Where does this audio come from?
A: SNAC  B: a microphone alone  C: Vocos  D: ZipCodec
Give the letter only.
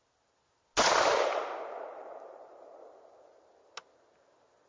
B